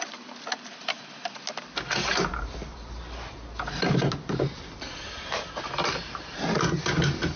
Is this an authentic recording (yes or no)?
yes